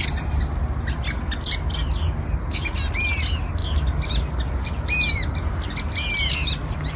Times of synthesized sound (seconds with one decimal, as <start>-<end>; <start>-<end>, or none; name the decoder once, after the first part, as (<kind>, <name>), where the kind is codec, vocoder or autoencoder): none